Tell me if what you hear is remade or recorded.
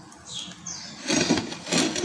recorded